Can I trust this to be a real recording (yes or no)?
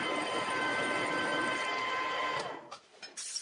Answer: yes